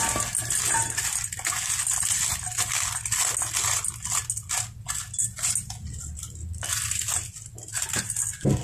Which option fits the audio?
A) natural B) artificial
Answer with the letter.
A